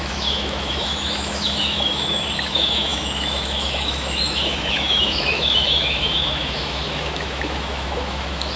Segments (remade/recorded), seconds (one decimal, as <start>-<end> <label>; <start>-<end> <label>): 0.0-8.6 remade